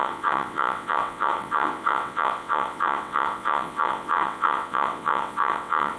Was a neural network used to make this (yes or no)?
yes